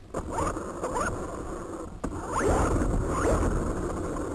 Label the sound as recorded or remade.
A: recorded